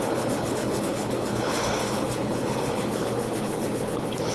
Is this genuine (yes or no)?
no